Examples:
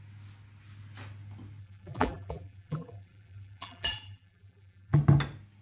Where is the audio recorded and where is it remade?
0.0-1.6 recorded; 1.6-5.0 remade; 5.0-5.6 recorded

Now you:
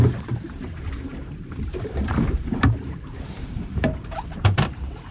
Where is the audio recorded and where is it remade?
0.0-5.1 remade

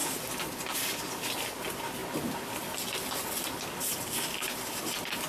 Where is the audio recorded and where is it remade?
0.0-5.3 recorded